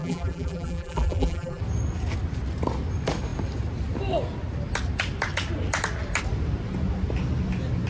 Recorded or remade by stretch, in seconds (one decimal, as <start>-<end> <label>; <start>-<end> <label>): 0.0-1.6 remade; 1.6-7.9 recorded